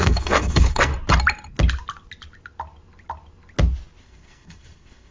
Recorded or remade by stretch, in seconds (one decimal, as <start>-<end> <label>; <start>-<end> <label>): 0.0-0.9 remade; 0.9-4.0 recorded; 4.0-5.1 remade